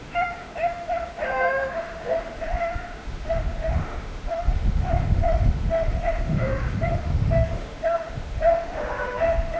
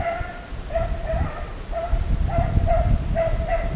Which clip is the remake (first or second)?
first